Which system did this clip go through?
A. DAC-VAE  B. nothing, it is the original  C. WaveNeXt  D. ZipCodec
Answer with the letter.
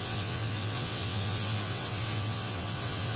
C